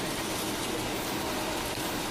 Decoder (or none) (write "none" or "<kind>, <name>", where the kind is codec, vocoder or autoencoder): none